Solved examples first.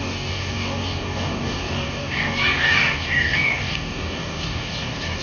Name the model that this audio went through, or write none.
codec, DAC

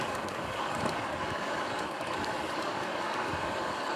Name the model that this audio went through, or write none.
codec, DAC